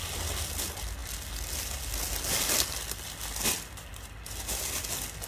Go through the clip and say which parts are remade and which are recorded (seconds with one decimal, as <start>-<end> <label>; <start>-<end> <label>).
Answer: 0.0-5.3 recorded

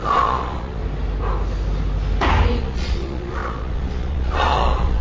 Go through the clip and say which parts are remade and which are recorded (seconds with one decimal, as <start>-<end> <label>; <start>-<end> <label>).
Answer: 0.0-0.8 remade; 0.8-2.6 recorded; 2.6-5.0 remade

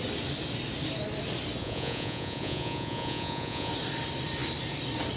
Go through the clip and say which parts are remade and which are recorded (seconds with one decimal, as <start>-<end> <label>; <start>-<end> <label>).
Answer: 0.0-1.6 recorded; 1.6-3.7 remade; 3.7-5.2 recorded